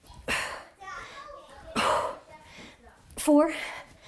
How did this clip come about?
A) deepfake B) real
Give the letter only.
A